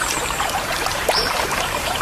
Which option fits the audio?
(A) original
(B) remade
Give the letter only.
B